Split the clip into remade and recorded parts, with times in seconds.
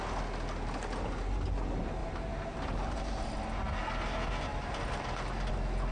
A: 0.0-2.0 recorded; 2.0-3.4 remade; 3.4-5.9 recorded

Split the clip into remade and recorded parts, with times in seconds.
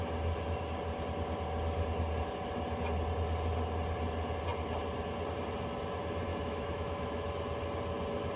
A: 0.0-6.3 recorded; 6.3-7.3 remade; 7.3-8.4 recorded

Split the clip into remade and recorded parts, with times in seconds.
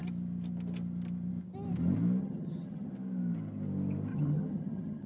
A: 0.0-2.2 recorded; 2.2-2.9 remade; 2.9-4.1 recorded; 4.1-5.1 remade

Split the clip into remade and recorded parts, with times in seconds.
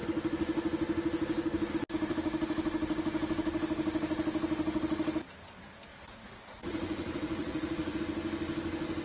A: 0.0-5.9 recorded; 5.9-8.0 remade; 8.0-9.0 recorded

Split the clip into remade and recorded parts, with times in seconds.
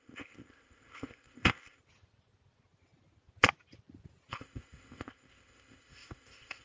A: 0.0-1.8 remade; 1.8-4.3 recorded; 4.3-6.6 remade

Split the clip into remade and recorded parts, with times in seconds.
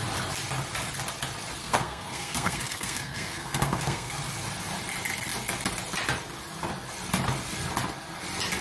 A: 0.0-1.6 recorded; 1.6-4.2 remade; 4.2-8.6 recorded